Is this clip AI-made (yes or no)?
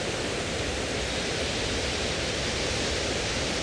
no